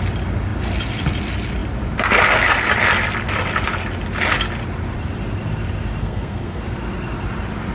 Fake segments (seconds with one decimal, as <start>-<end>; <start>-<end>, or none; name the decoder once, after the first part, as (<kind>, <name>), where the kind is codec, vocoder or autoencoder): 6.0-6.6 (codec, SNAC)